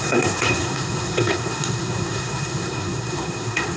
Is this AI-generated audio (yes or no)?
yes